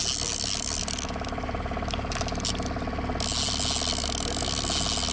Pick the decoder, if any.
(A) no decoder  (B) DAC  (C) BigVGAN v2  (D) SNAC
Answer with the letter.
A